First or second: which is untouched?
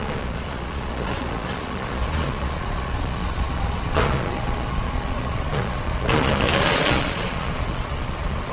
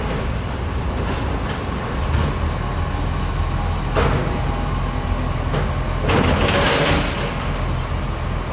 second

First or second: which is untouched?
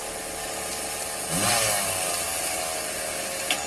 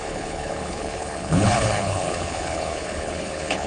first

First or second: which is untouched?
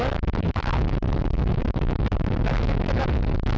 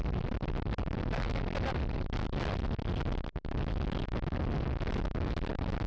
second